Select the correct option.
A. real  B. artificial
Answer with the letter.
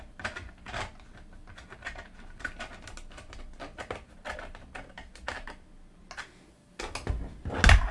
A